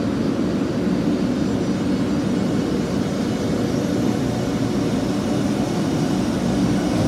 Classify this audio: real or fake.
real